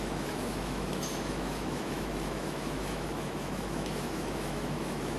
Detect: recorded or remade remade